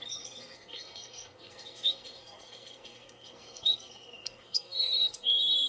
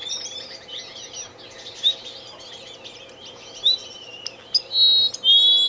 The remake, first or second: first